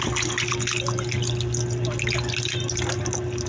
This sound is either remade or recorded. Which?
recorded